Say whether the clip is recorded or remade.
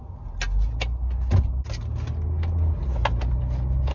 recorded